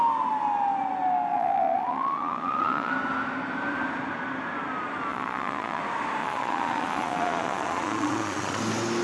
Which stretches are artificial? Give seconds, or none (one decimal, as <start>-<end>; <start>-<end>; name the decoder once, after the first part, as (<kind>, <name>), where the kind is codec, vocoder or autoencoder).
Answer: 1.3-2.9 (vocoder, Vocos); 5.1-5.8; 6.2-8.6